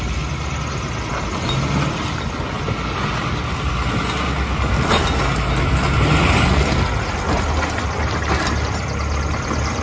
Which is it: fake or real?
real